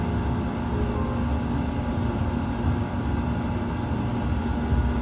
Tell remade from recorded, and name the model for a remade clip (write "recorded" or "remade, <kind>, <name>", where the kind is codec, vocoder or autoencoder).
recorded